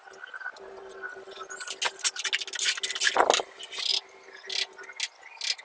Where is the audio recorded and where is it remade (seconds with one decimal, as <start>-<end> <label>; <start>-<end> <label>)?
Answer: 0.0-5.6 recorded